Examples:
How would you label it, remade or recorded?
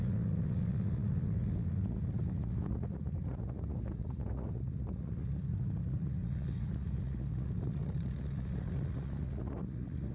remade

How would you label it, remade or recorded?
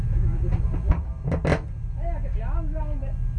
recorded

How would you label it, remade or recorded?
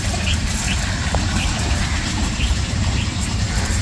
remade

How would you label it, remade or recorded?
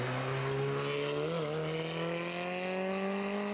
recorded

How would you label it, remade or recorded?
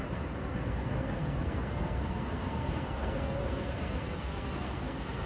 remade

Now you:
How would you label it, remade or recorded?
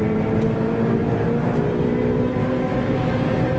recorded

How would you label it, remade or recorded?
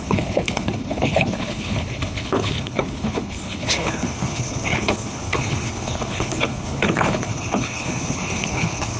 remade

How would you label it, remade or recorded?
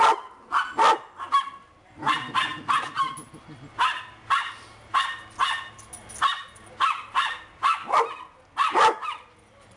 recorded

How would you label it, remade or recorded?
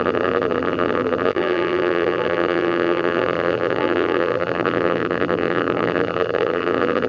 remade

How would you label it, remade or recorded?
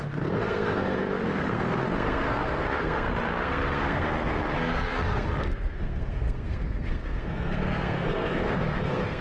remade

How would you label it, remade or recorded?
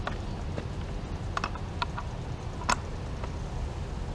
recorded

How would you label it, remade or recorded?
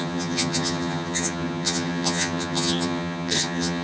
remade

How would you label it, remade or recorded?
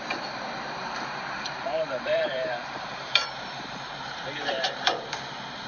remade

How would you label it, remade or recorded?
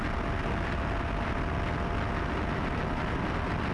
recorded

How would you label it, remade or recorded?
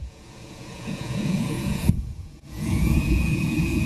remade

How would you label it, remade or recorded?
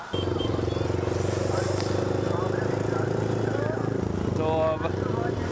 recorded